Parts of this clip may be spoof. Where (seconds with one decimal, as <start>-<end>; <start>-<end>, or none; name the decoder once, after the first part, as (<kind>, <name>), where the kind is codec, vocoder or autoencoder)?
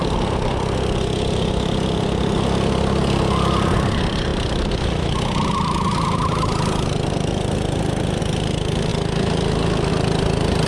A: none